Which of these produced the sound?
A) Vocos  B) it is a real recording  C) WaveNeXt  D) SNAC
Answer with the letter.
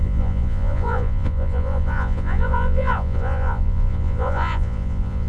A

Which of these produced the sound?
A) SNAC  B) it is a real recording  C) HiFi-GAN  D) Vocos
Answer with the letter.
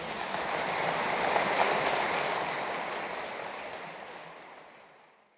B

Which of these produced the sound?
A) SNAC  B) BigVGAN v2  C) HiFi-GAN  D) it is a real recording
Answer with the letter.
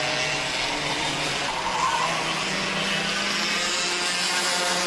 D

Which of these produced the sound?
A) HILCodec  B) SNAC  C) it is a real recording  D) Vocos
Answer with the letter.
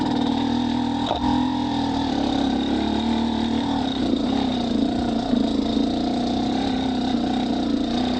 C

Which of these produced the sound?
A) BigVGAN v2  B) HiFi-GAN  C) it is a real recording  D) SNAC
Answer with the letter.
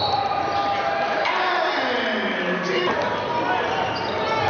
C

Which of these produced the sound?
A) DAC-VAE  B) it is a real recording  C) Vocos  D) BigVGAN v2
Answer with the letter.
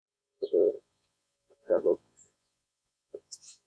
C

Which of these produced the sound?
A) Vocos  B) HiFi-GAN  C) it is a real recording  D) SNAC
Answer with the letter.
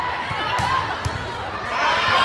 C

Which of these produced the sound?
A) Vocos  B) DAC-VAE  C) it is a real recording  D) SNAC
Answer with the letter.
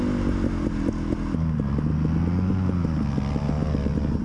C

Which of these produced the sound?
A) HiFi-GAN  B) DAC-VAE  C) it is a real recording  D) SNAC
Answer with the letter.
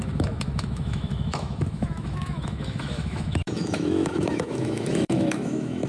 B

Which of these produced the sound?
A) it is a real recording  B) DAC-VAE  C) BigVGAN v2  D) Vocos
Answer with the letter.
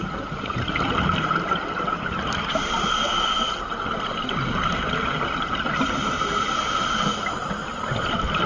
A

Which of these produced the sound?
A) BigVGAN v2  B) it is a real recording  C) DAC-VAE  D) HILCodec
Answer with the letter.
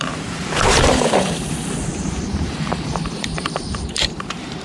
A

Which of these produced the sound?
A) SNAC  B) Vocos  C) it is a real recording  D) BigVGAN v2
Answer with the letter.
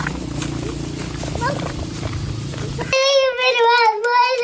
C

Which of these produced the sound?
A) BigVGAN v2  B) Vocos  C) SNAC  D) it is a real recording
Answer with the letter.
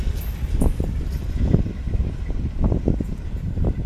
D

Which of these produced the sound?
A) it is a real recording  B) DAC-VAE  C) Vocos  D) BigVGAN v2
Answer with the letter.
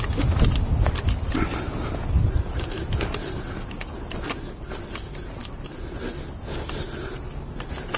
A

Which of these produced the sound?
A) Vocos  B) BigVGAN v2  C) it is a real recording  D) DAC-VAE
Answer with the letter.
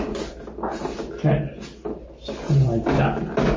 C